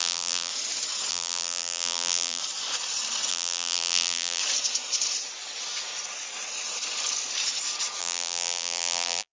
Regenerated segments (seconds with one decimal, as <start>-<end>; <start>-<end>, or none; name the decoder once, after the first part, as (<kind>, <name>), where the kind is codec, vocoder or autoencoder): 0.0-0.5 (vocoder, BigVGAN v2); 1.1-2.4; 3.3-4.4; 8.0-9.3